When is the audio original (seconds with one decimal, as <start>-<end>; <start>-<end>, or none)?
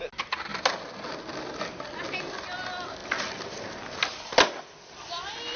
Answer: 0.0-5.6